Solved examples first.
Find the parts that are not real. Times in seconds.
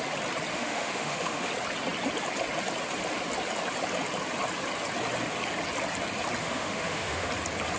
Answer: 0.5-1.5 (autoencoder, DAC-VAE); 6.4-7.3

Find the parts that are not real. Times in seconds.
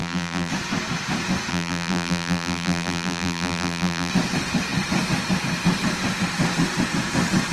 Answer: 0.0-0.5 (vocoder, BigVGAN v2); 1.5-4.1